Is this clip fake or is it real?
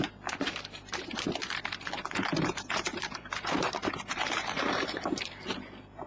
fake